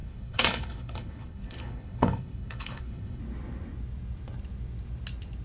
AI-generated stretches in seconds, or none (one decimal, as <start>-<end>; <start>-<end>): 0.0-3.2